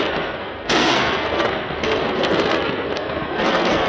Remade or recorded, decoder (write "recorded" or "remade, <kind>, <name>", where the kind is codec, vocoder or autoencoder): remade, codec, SNAC